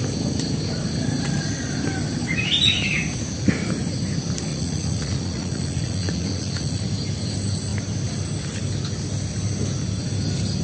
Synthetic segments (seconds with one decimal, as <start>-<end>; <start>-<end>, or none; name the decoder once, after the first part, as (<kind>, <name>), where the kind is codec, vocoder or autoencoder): 4.5-6.8 (vocoder, Vocos)